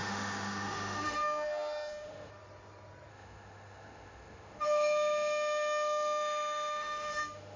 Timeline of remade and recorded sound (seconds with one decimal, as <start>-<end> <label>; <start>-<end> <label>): 0.0-2.3 remade; 2.3-3.1 recorded; 3.1-7.6 remade